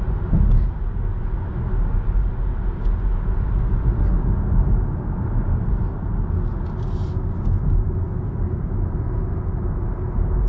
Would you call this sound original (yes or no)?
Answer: yes